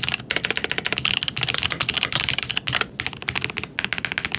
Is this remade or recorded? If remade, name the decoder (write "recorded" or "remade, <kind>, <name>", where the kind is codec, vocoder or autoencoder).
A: recorded